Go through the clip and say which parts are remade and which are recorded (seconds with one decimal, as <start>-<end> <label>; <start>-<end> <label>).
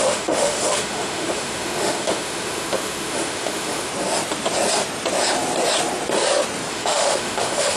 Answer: 0.0-3.9 remade; 3.9-6.7 recorded; 6.7-7.8 remade